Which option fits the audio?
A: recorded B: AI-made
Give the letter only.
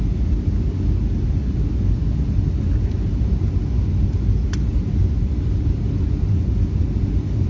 A